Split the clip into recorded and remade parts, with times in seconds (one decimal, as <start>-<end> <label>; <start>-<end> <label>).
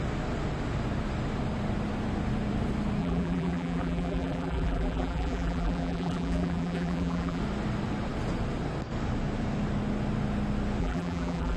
0.0-3.0 recorded; 3.0-7.4 remade; 7.4-10.8 recorded; 10.8-11.6 remade